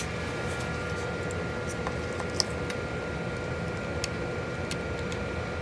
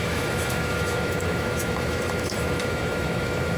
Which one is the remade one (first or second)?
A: second